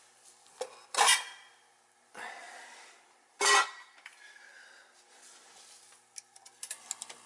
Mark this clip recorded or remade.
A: recorded